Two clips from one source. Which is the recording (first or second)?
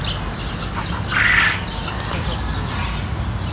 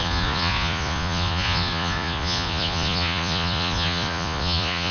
first